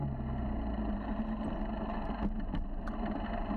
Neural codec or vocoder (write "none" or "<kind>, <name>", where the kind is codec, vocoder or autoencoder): none